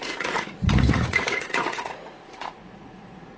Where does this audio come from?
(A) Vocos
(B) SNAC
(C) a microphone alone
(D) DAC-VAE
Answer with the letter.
A